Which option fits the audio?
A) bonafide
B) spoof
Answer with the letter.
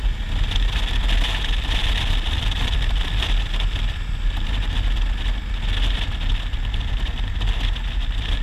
A